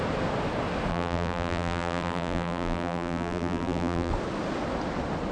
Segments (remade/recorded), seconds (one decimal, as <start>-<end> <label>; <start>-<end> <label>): 0.0-0.9 recorded; 0.9-4.1 remade; 4.1-5.3 recorded